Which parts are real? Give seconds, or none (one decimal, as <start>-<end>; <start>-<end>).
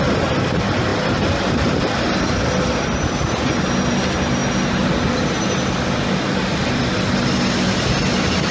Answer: 0.0-8.5